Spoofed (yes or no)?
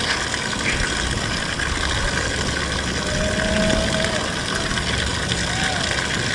no